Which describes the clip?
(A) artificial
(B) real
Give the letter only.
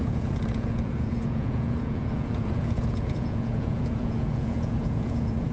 A